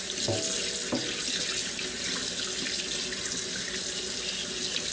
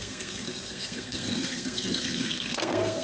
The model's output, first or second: second